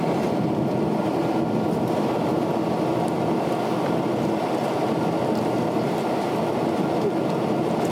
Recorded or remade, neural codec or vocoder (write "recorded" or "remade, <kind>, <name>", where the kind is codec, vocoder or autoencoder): recorded